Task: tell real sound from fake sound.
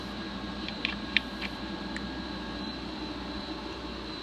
fake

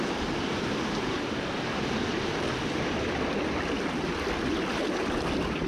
real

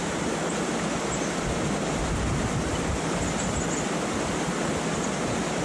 real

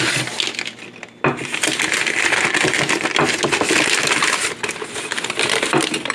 real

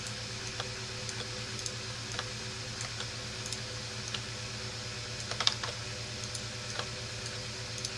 real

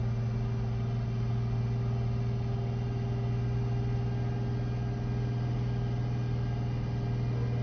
real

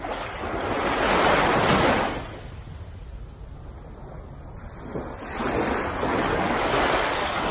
real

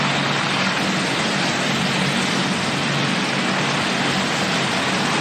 real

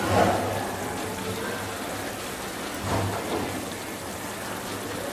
real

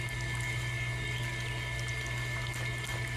real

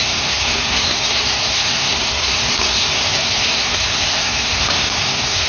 fake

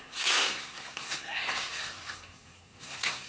fake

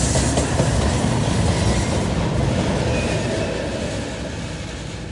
real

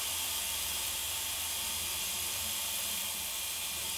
fake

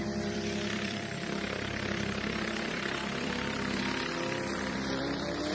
fake